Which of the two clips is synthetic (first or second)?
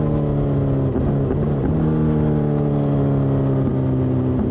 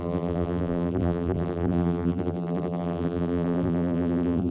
second